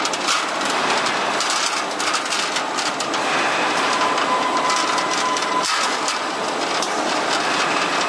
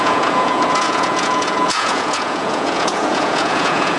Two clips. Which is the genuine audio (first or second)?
first